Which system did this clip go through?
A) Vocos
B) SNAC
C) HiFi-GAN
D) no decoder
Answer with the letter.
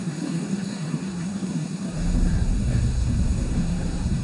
B